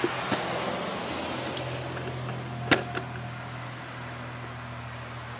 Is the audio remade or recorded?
recorded